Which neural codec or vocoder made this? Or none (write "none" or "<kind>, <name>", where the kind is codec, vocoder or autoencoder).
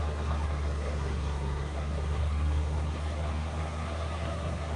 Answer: codec, SNAC